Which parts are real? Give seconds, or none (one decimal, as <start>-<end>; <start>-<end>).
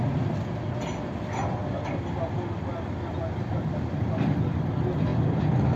1.6-3.5; 5.1-5.8